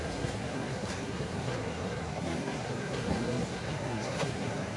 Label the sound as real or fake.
fake